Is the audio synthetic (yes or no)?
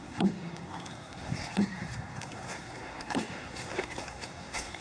yes